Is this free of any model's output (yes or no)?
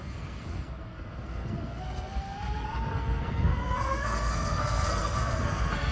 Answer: no